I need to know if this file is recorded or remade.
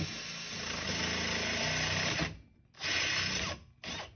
recorded